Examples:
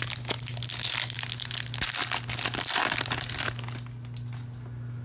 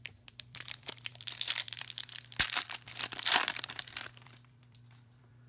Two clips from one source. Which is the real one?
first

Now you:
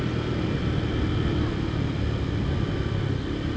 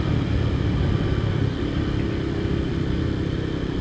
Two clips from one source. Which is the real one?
first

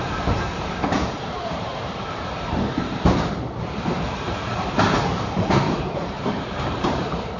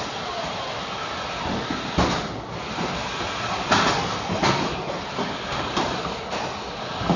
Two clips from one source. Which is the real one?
second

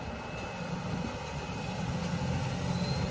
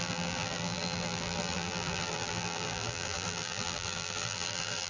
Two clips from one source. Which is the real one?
first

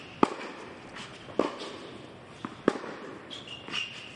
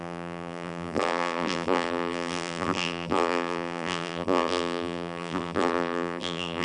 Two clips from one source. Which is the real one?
first